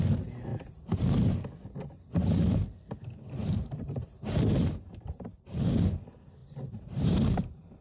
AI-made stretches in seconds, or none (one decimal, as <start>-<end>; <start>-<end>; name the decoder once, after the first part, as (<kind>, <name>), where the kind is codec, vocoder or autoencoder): 0.5-1.3 (vocoder, BigVGAN v2); 3.4-5.6; 6.4-7.8